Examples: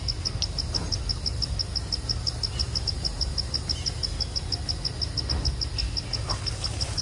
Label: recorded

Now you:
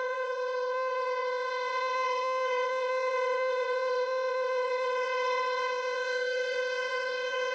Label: remade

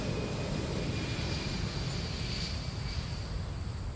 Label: recorded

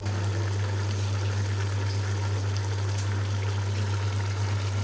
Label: recorded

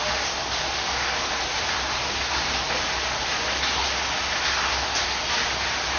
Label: recorded